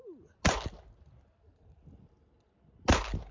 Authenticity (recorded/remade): recorded